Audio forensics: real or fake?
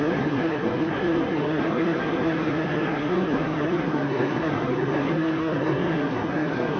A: fake